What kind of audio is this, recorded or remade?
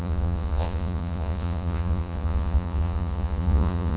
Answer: remade